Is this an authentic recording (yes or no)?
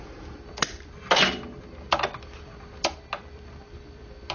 yes